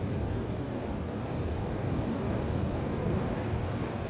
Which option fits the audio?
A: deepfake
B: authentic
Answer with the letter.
A